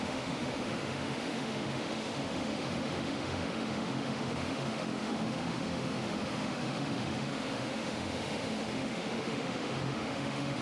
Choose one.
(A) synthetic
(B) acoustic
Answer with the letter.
A